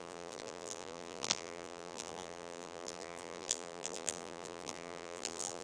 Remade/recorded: remade